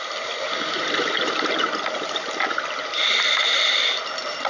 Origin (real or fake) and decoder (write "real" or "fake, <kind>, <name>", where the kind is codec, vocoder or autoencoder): real